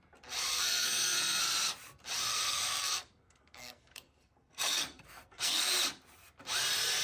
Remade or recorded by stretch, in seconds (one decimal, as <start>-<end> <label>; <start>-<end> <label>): 0.0-0.5 recorded; 0.5-1.4 remade; 1.4-2.3 recorded; 2.3-5.6 remade; 5.6-7.0 recorded